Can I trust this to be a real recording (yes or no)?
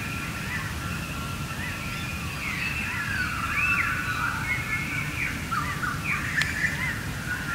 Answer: yes